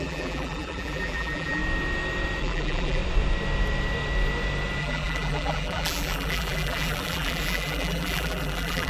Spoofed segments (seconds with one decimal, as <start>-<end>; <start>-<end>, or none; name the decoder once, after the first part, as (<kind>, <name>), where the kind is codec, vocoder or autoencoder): 0.0-1.6 (vocoder, BigVGAN v2); 2.4-3.0; 4.8-8.9